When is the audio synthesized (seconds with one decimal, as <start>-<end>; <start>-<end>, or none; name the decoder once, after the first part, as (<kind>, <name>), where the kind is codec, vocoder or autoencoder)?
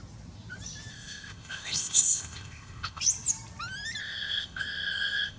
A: 0.9-3.0 (codec, ZipCodec); 4.0-5.4